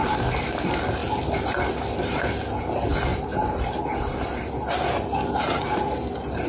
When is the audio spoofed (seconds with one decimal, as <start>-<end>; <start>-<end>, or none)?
3.1-3.8